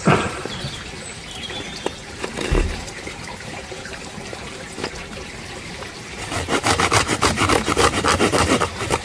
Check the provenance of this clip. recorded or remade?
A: remade